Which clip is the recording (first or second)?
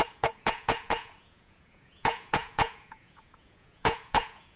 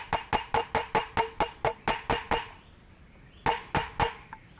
second